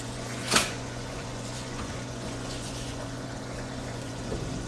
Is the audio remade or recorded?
remade